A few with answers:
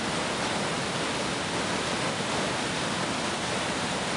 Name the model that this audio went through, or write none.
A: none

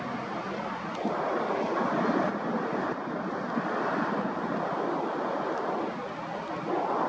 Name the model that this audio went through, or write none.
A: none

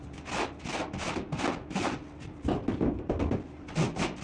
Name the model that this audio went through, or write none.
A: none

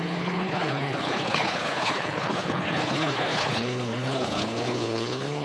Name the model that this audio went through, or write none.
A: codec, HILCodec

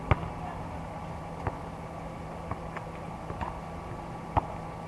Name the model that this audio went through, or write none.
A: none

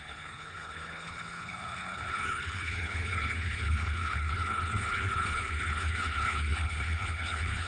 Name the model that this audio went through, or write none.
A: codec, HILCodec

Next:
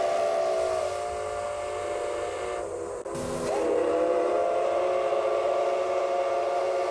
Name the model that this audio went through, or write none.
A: none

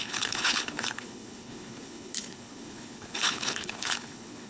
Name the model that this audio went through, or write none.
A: codec, HILCodec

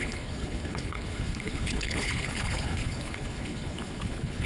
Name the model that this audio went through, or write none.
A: codec, HILCodec